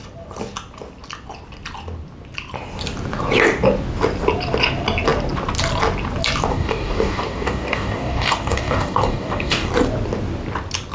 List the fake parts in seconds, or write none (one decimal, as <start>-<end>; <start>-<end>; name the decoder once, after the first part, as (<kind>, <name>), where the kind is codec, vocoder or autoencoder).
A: 6.5-9.7 (codec, DAC)